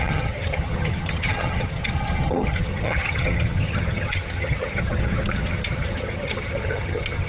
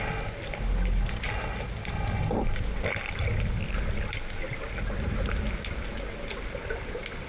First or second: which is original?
second